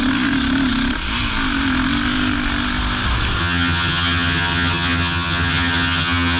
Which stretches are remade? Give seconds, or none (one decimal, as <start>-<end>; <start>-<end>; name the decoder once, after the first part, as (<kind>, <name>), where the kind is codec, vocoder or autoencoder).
3.4-6.4 (vocoder, HiFi-GAN)